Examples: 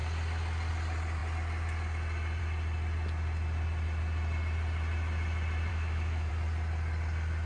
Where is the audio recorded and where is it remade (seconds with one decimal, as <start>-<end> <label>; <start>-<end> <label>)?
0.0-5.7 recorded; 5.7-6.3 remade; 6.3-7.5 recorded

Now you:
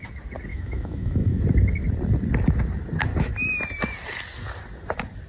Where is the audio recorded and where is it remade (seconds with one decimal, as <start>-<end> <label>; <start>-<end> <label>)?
0.0-0.5 recorded; 0.5-1.4 remade; 1.4-5.3 recorded

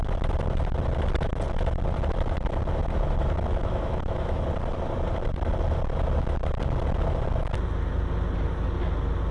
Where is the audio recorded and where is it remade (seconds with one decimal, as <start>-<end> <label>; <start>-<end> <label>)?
0.0-3.6 recorded; 3.6-4.4 remade; 4.4-9.3 recorded

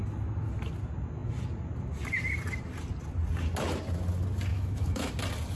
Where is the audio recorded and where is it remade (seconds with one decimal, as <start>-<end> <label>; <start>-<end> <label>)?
0.0-4.5 recorded; 4.5-5.1 remade; 5.1-5.6 recorded

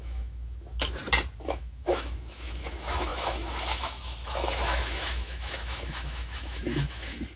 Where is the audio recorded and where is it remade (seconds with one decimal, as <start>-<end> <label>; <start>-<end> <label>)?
0.0-1.0 remade; 1.0-1.5 recorded; 1.5-7.4 remade

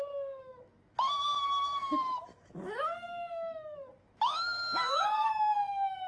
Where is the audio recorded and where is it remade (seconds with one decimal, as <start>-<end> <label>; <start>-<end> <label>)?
0.0-6.1 remade

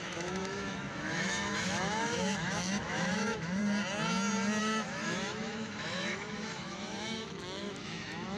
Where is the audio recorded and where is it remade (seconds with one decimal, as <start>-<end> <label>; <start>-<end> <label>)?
0.0-3.6 remade; 3.6-4.6 recorded; 4.6-8.4 remade